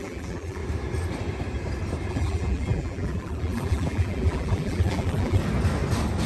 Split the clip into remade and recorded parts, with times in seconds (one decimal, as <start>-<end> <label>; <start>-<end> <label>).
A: 0.0-0.6 remade; 0.6-2.1 recorded; 2.1-5.4 remade; 5.4-6.3 recorded